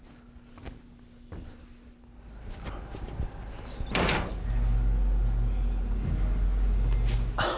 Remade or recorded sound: recorded